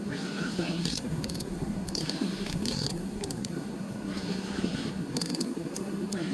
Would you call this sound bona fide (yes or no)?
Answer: no